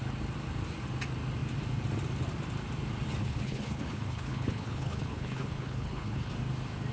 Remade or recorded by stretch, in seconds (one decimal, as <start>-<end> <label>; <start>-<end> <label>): 0.0-3.2 recorded; 3.2-6.3 remade; 6.3-6.9 recorded